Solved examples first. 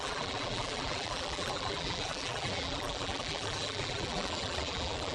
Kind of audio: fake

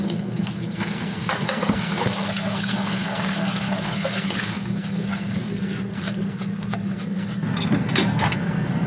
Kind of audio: fake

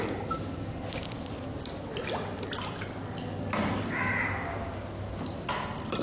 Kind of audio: real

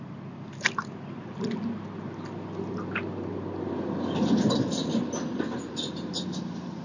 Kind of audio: real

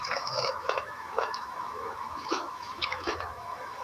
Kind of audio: fake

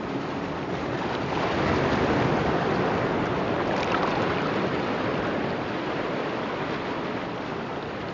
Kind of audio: fake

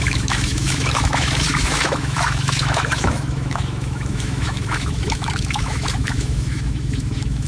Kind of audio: fake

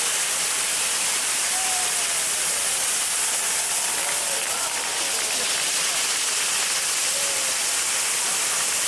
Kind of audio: fake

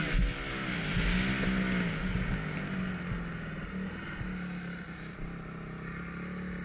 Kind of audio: real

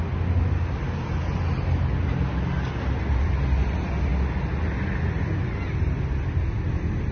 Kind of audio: real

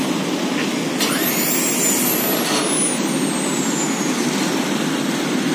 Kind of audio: real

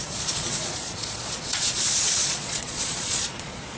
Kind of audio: fake